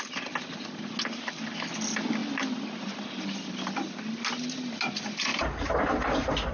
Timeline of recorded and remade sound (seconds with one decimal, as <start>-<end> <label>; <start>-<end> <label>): 0.0-2.2 recorded; 2.2-3.5 remade; 3.5-5.3 recorded; 5.3-5.8 remade; 5.8-6.5 recorded